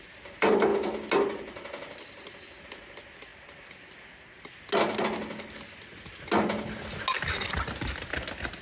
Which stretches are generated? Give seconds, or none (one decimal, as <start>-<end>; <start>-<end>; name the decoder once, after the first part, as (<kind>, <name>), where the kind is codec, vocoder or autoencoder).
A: none